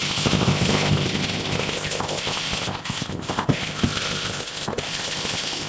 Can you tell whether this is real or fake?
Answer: fake